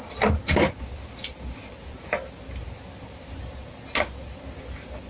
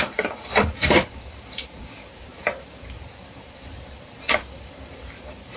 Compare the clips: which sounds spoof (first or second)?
second